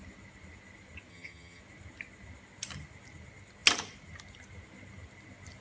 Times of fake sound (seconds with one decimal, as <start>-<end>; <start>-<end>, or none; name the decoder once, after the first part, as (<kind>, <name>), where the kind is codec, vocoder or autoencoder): 1.1-1.6 (vocoder, HiFi-GAN)